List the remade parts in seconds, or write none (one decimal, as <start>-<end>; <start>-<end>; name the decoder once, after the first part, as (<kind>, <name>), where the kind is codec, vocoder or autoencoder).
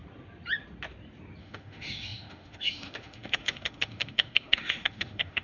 1.4-5.4 (autoencoder, DAC-VAE)